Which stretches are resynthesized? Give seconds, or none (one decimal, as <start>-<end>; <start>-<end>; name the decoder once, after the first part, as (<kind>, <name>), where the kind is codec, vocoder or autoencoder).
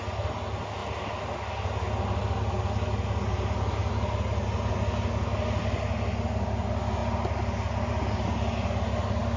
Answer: none